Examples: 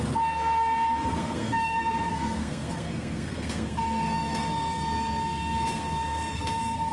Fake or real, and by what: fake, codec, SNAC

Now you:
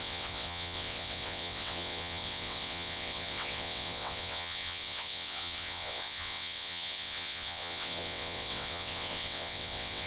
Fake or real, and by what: fake, vocoder, WaveNeXt